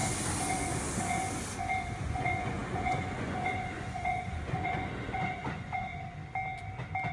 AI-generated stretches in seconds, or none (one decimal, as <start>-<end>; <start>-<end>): 2.0-5.9